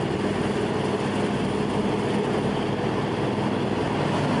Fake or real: real